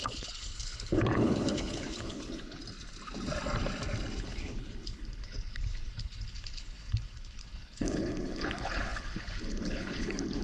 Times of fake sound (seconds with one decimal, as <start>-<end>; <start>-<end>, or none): 0.0-2.6; 4.2-10.4